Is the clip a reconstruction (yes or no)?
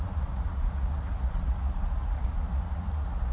yes